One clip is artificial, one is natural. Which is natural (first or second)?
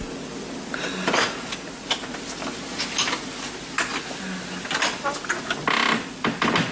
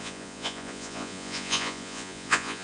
first